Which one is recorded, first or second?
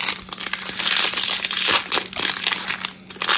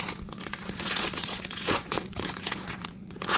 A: first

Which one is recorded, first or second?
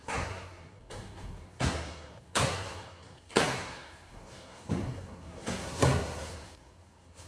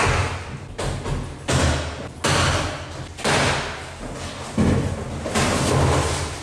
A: second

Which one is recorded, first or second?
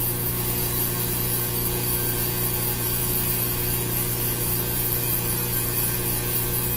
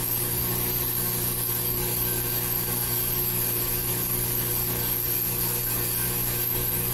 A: first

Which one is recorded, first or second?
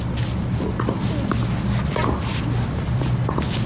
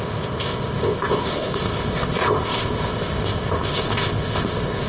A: first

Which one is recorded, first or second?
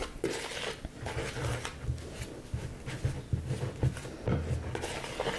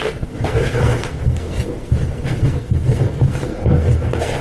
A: first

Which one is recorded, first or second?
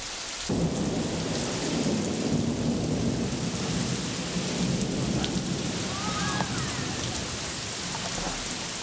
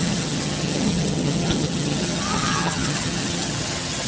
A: first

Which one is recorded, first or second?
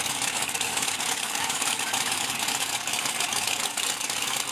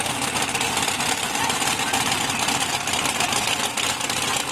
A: second